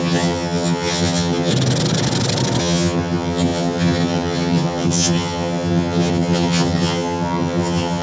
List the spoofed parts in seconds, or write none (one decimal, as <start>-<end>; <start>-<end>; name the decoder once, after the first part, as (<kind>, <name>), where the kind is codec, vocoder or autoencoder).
0.0-1.5 (vocoder, HiFi-GAN); 2.6-8.0